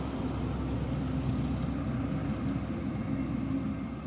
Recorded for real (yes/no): yes